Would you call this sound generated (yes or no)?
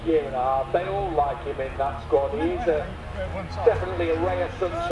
no